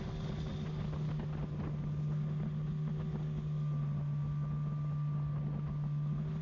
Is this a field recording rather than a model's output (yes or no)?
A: yes